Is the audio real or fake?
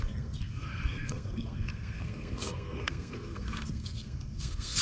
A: fake